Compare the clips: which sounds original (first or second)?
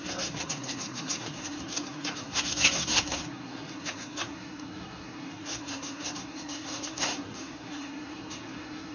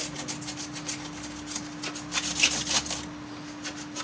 second